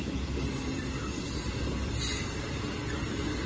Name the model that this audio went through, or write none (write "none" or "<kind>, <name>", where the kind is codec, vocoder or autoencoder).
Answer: none